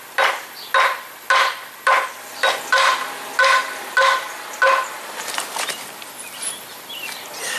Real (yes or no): yes